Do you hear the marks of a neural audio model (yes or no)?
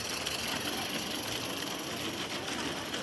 no